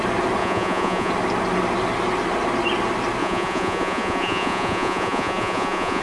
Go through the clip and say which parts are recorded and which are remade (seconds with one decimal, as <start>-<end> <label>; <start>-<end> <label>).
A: 0.0-0.4 recorded; 0.4-1.1 remade; 1.1-3.2 recorded; 3.2-6.0 remade